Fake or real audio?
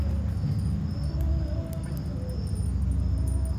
real